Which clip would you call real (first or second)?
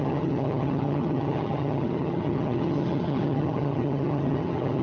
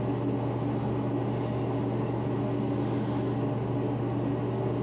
second